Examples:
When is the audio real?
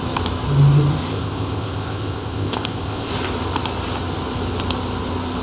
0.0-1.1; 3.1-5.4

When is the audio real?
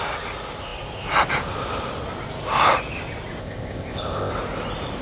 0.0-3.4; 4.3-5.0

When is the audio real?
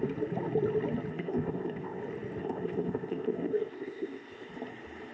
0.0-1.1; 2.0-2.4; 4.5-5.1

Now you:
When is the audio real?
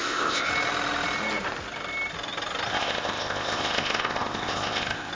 0.5-2.7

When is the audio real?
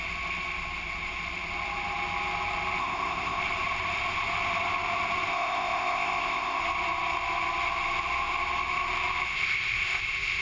0.0-2.8; 3.4-5.3; 6.6-9.3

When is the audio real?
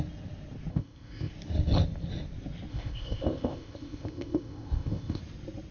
0.0-0.7; 1.3-2.7; 5.2-5.7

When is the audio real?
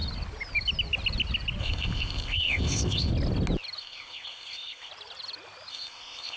0.0-1.6; 3.1-3.8; 4.9-5.7